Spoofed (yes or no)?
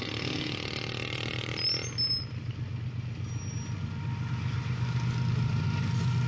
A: no